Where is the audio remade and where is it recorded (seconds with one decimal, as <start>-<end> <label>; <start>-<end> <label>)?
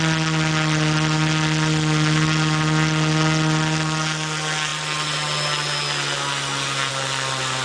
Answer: 0.0-7.6 recorded